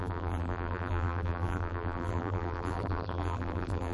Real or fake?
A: fake